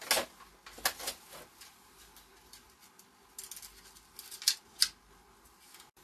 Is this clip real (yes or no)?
yes